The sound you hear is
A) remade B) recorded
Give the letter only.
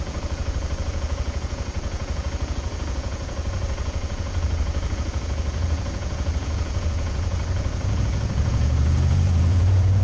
A